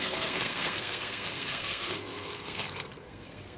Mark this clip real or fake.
fake